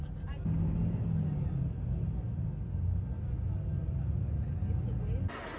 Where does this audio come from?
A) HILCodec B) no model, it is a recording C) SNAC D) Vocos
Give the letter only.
B